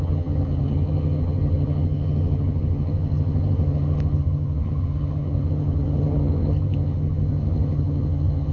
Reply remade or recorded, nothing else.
remade